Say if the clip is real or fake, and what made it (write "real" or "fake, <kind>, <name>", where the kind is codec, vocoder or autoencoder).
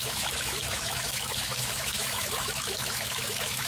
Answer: fake, autoencoder, DAC-VAE